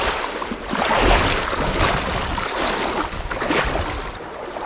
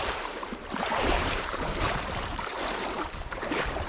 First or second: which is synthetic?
second